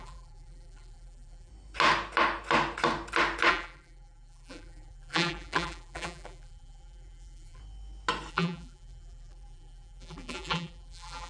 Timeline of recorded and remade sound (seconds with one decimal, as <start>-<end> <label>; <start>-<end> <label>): 0.0-1.5 remade; 1.5-3.5 recorded; 3.5-7.6 remade; 7.6-8.3 recorded; 8.3-11.3 remade